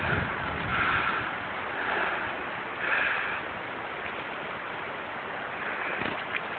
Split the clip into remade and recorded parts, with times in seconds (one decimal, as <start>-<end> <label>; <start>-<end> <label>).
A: 0.0-2.7 recorded; 2.7-5.0 remade; 5.0-6.6 recorded